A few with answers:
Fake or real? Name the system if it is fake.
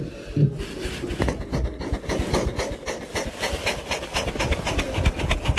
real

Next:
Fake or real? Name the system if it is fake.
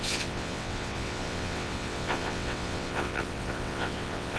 fake, vocoder, WaveNeXt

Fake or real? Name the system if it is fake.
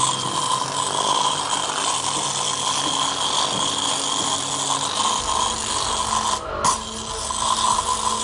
real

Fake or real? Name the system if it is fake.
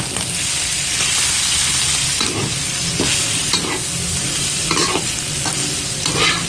real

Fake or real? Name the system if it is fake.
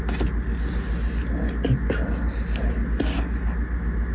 real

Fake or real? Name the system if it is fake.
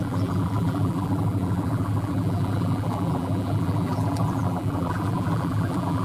fake, vocoder, BigVGAN v2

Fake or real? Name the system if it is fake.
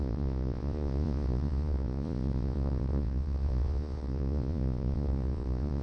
fake, vocoder, Vocos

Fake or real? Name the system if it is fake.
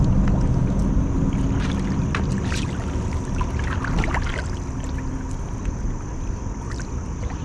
real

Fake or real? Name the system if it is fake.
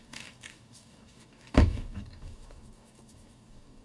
fake, codec, DAC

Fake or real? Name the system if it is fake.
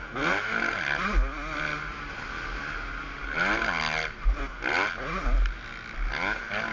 real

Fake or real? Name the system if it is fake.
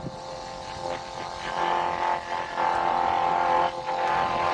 real